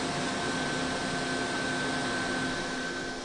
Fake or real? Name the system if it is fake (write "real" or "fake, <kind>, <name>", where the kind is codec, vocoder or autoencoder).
real